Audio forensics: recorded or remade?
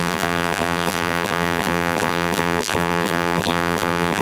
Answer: remade